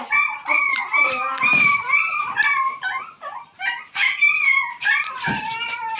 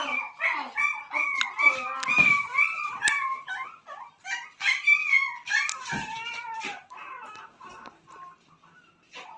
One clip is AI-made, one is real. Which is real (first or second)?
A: second